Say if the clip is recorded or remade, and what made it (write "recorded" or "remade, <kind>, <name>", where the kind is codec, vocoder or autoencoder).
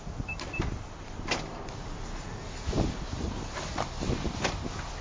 recorded